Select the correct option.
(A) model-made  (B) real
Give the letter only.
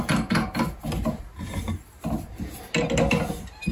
B